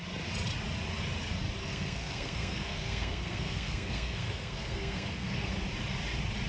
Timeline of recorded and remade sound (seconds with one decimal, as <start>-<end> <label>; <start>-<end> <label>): 0.0-1.6 recorded; 1.6-5.5 remade; 5.5-6.5 recorded